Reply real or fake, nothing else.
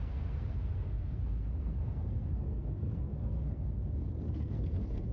fake